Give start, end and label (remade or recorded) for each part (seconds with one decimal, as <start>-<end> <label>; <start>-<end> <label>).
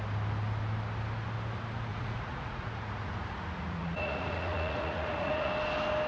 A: 0.0-1.9 recorded; 1.9-5.5 remade; 5.5-6.1 recorded